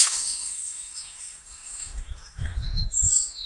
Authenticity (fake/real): fake